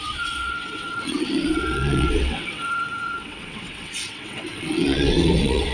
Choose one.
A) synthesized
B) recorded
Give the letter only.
A